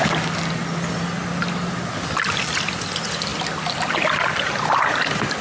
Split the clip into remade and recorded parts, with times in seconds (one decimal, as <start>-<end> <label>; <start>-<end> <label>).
0.0-5.4 recorded